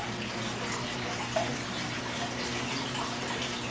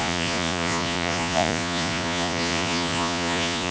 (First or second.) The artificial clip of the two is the second